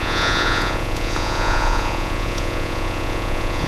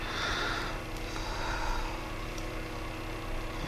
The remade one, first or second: first